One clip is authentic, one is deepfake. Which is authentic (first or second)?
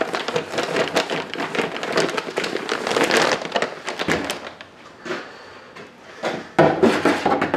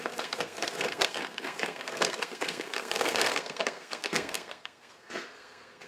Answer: first